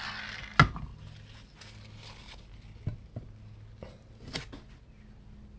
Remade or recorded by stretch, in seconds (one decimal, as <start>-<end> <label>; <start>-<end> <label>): 0.0-5.6 recorded